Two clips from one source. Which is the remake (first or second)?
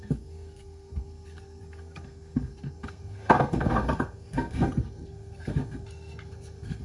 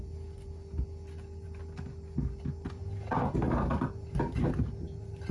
first